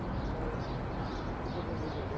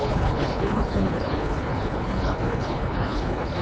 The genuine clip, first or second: first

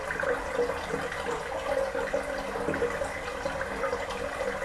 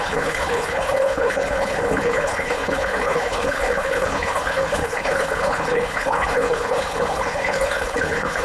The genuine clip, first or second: first